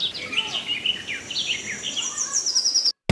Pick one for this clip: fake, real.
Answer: real